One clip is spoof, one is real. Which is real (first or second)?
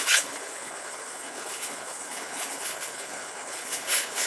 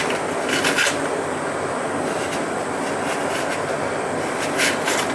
second